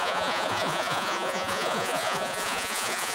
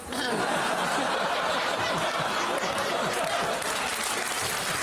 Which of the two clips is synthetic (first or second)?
first